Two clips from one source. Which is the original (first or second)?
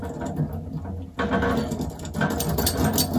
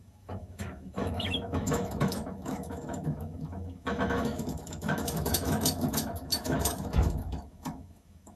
first